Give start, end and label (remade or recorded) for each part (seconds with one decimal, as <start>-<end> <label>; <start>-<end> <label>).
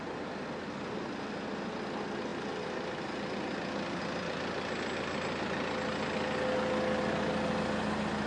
0.0-8.3 recorded